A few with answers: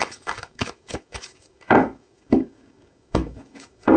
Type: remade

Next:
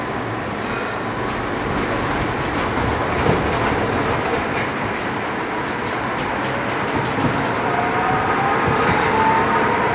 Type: recorded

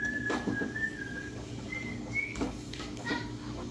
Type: remade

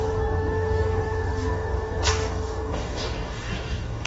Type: remade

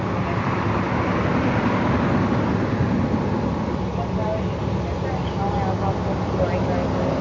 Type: recorded